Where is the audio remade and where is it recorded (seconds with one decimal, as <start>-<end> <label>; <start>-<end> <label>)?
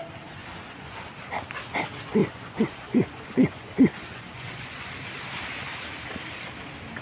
0.0-0.4 recorded; 0.4-1.1 remade; 1.1-2.2 recorded; 2.2-4.9 remade; 4.9-7.0 recorded